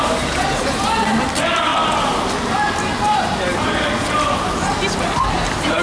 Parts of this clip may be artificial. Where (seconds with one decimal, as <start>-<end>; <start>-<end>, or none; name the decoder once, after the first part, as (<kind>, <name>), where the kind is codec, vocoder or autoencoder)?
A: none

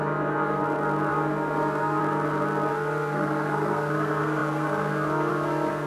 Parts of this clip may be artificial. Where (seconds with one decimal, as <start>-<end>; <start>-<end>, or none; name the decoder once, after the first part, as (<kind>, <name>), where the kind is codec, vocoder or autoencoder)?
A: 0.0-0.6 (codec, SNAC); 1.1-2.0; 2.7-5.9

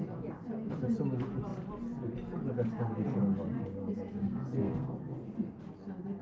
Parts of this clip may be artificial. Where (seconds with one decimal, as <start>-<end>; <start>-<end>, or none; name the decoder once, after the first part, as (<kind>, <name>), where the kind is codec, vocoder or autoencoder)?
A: 3.8-5.6 (codec, SNAC)

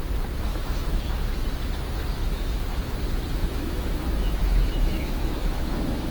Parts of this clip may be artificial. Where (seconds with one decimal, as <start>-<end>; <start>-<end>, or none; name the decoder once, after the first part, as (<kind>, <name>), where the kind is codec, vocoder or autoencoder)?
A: 0.5-1.1 (autoencoder, DAC-VAE); 2.2-2.8; 3.4-6.1

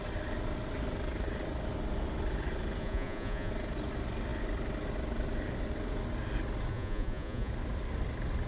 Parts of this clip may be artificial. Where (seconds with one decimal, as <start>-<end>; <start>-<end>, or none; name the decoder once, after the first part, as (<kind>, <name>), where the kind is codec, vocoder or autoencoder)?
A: 2.8-3.5 (vocoder, Vocos); 6.7-7.5